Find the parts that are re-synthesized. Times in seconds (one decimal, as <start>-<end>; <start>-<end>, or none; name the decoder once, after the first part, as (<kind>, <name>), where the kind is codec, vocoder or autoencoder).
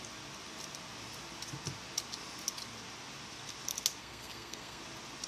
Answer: 4.0-4.8 (codec, SNAC)